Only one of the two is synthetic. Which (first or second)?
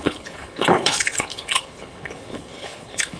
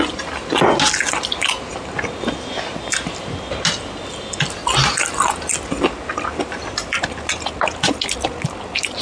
first